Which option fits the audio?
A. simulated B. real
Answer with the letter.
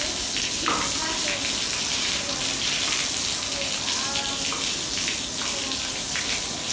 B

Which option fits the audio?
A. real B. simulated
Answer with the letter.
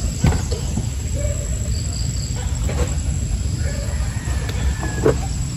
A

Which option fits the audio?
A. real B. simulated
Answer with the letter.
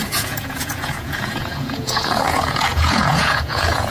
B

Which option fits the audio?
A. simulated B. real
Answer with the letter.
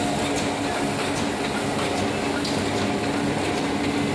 B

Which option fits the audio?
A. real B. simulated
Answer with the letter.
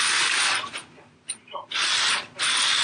A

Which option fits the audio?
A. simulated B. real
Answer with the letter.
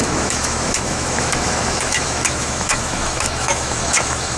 A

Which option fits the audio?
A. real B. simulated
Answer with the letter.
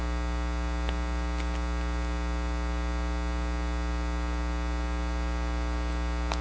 A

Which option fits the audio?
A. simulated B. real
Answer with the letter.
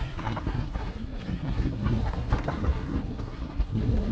A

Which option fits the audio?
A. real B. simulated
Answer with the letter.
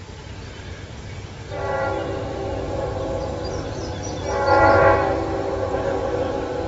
A